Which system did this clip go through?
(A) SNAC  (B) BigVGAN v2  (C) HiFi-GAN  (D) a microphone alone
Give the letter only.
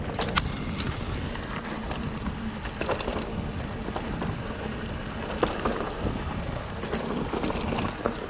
D